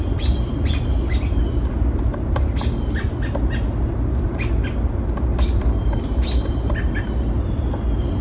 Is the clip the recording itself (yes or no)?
yes